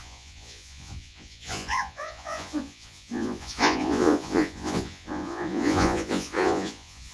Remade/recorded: remade